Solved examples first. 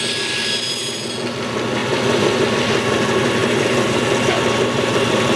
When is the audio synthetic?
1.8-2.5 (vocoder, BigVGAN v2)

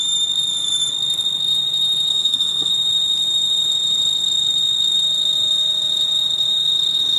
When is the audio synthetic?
2.1-2.7 (codec, SNAC)

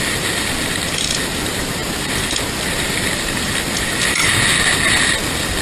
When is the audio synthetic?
none

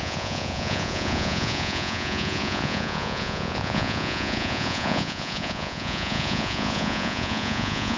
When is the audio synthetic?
0.0-8.0 (vocoder, Vocos)

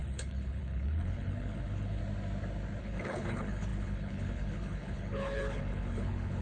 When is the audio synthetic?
0.0-2.0 (codec, HILCodec); 2.8-6.4

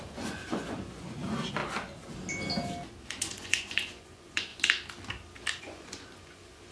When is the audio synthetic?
0.0-1.6 (vocoder, Vocos); 3.0-4.5; 5.6-6.7

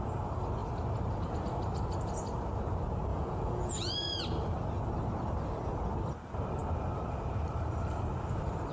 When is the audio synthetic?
3.1-4.2 (vocoder, Vocos)